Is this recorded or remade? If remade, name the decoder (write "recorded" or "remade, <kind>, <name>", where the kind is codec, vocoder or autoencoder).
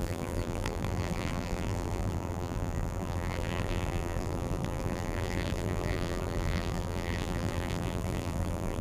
remade, vocoder, BigVGAN v2